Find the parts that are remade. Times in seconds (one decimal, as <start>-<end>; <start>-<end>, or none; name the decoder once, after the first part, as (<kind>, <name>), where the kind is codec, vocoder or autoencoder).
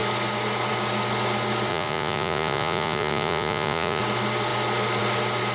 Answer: 1.7-4.0 (vocoder, Vocos)